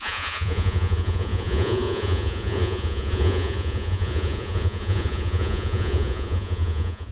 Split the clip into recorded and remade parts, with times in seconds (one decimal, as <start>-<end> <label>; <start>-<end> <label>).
0.0-7.1 remade